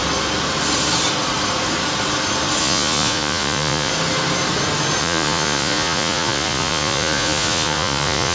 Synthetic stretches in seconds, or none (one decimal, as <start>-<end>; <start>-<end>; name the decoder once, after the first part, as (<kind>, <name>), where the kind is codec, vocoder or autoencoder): 2.6-3.9 (vocoder, Vocos); 5.0-8.3